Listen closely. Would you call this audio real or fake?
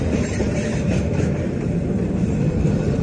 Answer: fake